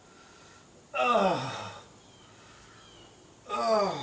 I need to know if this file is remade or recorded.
recorded